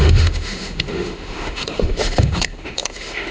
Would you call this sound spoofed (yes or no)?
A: yes